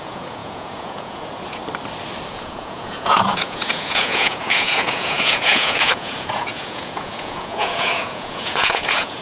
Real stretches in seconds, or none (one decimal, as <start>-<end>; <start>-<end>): 1.6-2.3